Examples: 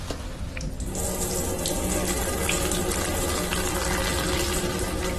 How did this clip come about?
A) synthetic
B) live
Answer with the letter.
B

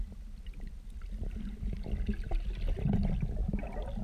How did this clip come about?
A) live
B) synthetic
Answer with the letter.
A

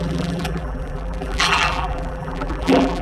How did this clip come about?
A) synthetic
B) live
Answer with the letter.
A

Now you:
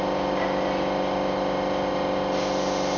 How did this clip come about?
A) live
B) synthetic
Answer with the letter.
A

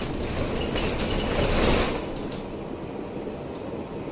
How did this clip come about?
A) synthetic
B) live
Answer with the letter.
B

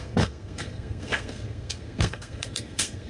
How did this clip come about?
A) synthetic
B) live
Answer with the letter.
A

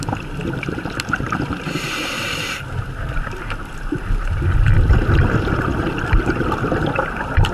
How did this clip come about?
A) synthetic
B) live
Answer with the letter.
A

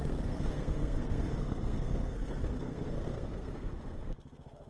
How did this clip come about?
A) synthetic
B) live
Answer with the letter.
A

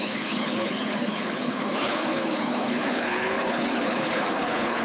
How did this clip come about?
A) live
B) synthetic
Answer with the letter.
B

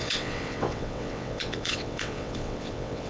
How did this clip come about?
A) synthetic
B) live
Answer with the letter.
A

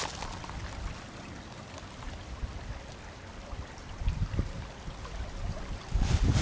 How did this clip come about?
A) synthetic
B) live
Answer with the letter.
B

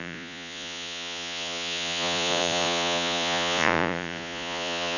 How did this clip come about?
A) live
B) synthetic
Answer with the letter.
B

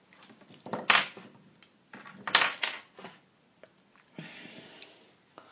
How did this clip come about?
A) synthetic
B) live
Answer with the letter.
B